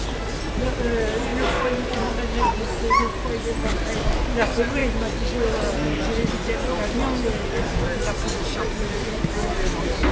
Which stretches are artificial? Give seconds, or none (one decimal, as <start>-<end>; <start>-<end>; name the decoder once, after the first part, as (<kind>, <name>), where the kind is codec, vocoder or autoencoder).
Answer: none